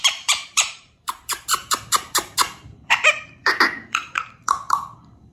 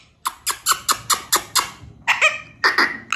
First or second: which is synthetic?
first